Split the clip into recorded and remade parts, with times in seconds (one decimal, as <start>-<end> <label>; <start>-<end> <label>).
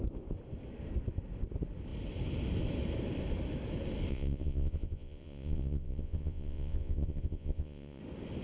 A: 0.0-4.1 recorded; 4.1-8.0 remade; 8.0-8.4 recorded